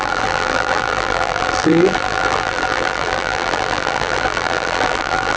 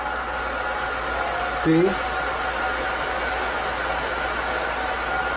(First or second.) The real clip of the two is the second